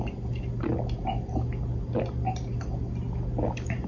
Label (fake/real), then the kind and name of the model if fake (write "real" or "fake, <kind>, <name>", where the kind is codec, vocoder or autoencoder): real